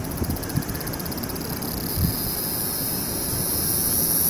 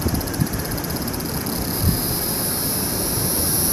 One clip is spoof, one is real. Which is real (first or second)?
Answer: first